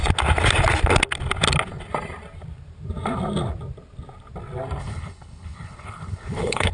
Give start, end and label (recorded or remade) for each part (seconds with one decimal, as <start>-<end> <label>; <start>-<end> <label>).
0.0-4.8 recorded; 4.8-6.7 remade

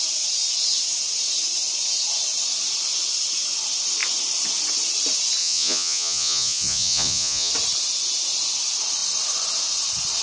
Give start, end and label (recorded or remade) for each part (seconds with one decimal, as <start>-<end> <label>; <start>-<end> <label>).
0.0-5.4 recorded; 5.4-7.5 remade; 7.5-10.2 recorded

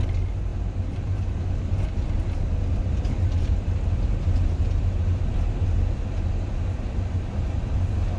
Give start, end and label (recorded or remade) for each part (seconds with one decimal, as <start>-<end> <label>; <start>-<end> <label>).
0.0-8.2 recorded